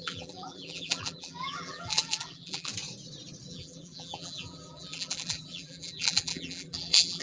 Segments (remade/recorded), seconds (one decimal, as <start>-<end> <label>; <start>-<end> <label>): 0.0-2.7 remade; 2.7-3.5 recorded; 3.5-7.2 remade